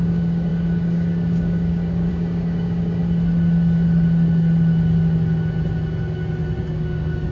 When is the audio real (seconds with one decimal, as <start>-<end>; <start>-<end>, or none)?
3.0-6.6